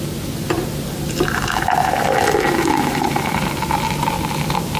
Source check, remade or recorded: recorded